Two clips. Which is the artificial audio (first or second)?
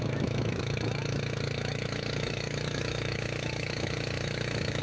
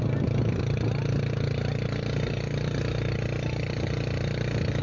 first